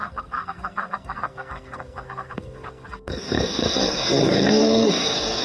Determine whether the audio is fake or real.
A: fake